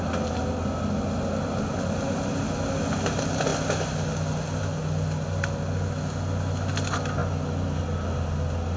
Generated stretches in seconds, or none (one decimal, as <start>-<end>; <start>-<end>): 3.5-4.6; 7.2-7.8